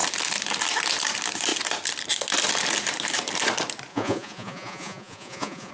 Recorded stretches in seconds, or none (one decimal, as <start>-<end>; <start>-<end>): 0.0-3.9